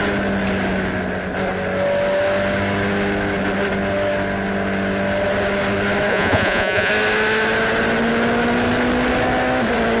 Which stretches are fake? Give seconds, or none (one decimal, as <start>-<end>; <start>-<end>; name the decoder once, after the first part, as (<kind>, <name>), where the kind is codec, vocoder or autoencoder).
6.1-6.9 (vocoder, Vocos)